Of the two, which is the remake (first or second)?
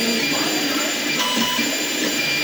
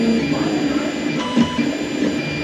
first